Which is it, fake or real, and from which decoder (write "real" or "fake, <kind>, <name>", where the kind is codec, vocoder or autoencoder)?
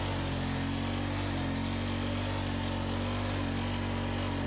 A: real